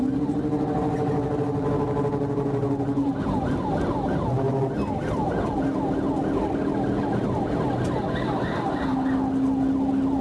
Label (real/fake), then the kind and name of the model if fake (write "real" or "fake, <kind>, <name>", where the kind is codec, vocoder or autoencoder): real